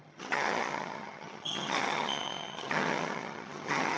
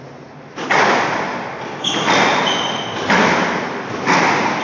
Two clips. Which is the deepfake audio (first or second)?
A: first